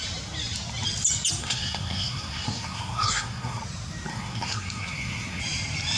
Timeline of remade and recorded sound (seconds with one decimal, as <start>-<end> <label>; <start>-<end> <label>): 0.0-1.4 recorded; 1.4-3.6 remade; 3.6-4.1 recorded; 4.1-5.4 remade; 5.4-6.0 recorded